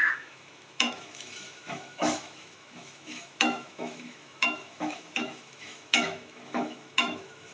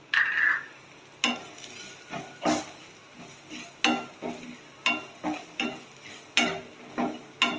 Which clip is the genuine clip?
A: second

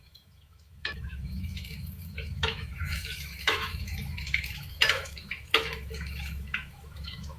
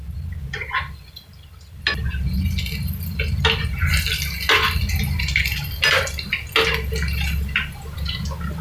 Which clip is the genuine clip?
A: second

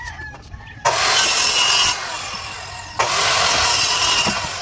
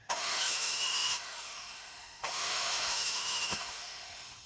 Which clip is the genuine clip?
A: first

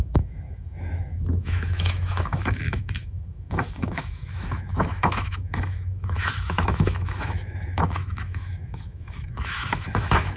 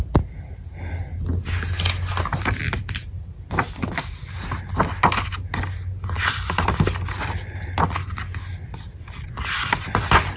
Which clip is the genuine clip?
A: second